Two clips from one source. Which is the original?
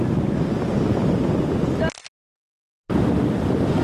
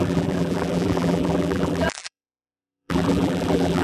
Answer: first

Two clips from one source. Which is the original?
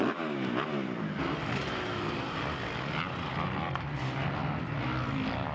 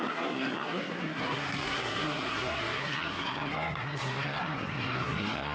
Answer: first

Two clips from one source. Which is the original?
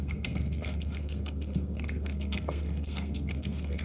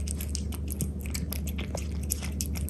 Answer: second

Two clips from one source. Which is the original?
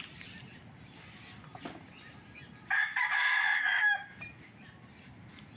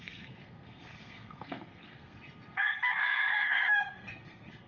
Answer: first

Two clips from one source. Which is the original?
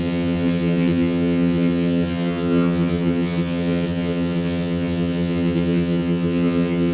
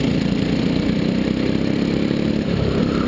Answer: second